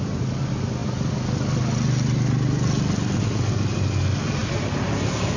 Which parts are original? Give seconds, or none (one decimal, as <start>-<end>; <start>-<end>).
0.0-5.4